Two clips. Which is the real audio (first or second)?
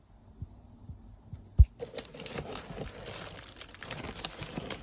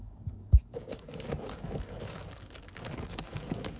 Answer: first